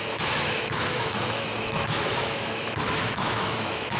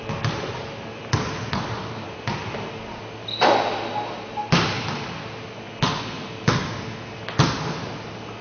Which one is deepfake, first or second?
first